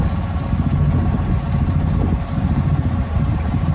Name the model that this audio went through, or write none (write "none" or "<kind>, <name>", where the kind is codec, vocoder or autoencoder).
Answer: none